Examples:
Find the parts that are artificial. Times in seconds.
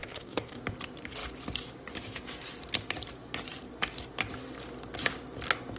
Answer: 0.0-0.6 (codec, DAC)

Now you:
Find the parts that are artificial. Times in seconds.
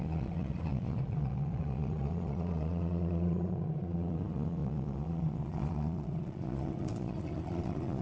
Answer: 0.0-8.0 (vocoder, Vocos)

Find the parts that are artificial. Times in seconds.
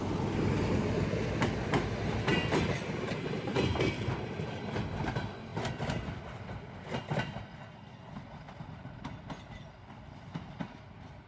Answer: none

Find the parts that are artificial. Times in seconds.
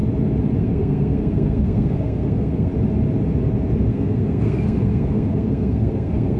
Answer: 0.6-2.7 (codec, SNAC); 3.9-6.4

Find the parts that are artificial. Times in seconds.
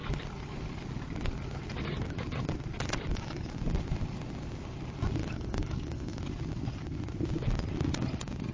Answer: 3.1-3.6 (codec, DAC); 5.2-6.2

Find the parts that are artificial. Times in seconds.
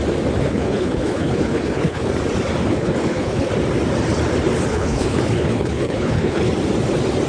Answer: 0.4-2.1 (codec, HILCodec); 2.7-3.5; 4.7-6.5